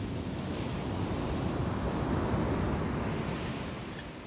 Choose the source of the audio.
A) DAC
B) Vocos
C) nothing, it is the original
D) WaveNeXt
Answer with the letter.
C